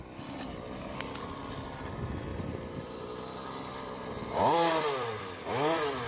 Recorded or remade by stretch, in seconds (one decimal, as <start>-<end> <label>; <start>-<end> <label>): 0.0-2.3 recorded; 2.3-6.1 remade